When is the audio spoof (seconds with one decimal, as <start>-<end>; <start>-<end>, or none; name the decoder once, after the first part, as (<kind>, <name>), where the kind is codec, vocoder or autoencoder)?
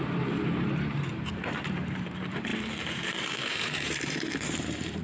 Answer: 0.0-5.0 (vocoder, BigVGAN v2)